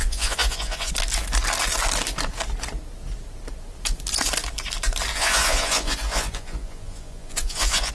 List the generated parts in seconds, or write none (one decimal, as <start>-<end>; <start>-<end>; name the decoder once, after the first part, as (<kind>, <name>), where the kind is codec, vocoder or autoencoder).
0.0-0.9 (vocoder, Vocos); 5.1-7.9